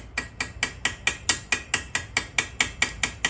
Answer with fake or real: real